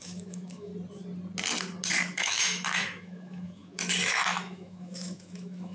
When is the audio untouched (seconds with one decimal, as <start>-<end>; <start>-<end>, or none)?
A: 0.7-1.9